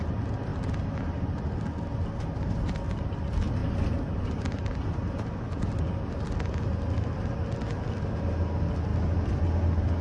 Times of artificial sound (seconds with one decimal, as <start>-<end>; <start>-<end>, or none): none